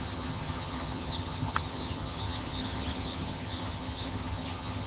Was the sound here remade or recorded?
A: remade